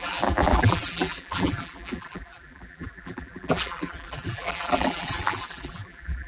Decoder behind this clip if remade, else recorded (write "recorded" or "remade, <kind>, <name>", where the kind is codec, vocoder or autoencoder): remade, vocoder, BigVGAN v2